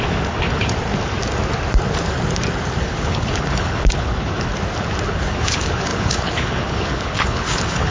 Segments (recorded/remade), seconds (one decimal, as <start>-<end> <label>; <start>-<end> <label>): 0.0-0.6 remade; 0.6-2.8 recorded; 2.8-4.5 remade; 4.5-5.1 recorded; 5.1-7.9 remade